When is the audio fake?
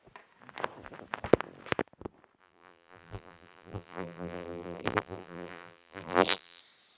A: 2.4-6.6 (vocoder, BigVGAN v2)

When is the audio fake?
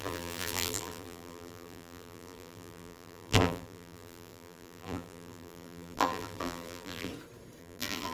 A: 0.0-7.1 (vocoder, BigVGAN v2); 7.6-8.1